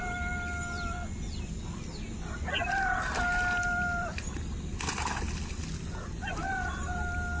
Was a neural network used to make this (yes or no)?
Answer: no